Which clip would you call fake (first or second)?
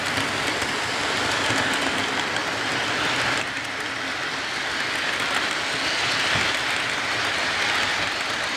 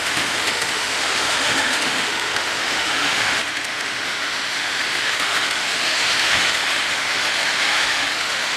second